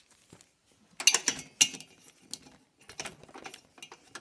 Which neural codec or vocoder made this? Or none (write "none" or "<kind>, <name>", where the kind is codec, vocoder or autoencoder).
none